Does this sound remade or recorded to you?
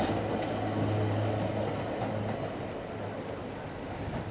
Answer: recorded